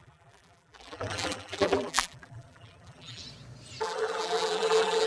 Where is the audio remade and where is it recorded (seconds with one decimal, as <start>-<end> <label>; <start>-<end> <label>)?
0.0-3.2 remade; 3.2-3.8 recorded; 3.8-5.1 remade